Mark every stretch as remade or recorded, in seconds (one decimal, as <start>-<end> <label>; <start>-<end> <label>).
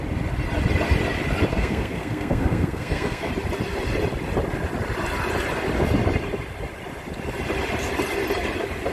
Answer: 0.0-1.5 recorded; 1.5-3.3 remade; 3.3-8.9 recorded